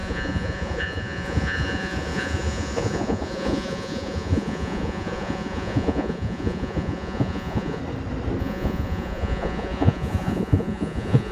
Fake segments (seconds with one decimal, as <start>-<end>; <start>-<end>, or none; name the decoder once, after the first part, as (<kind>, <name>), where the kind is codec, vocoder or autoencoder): 0.0-7.8 (vocoder, Vocos); 8.4-11.3